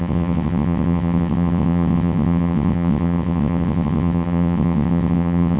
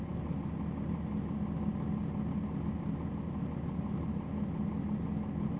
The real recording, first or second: second